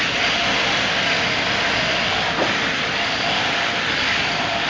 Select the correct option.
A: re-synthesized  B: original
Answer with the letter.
B